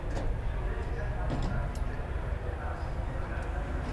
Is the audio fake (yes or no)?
no